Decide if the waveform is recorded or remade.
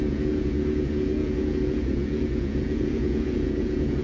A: remade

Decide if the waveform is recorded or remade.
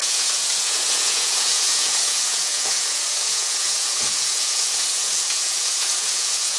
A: remade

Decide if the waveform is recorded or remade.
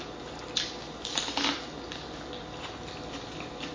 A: recorded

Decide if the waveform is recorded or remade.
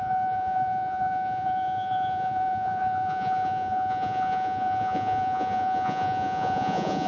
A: remade